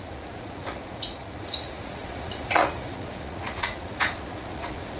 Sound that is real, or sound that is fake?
fake